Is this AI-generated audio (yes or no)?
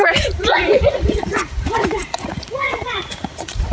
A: yes